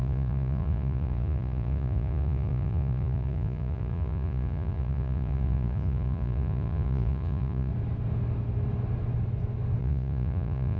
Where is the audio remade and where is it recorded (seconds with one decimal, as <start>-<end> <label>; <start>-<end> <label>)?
0.0-7.7 remade; 7.7-9.8 recorded; 9.8-10.8 remade